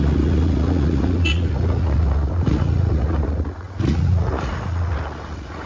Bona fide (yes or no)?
no